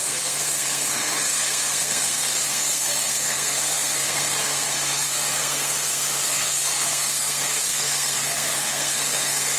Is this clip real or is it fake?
fake